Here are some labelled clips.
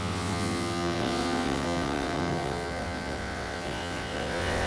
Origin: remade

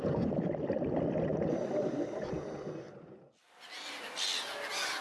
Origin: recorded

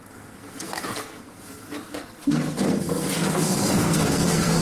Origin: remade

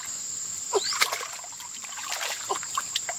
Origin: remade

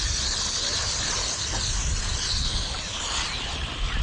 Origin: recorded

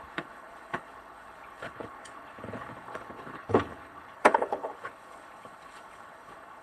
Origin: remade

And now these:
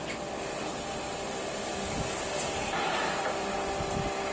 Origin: recorded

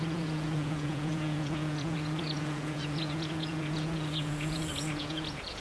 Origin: remade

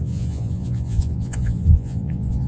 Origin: remade